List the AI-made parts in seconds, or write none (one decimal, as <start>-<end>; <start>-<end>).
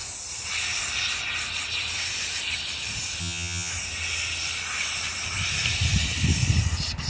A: 3.2-3.7